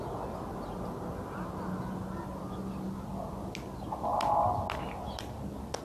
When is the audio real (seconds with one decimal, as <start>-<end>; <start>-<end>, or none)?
0.0-5.8